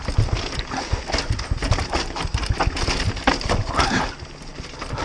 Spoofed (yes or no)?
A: no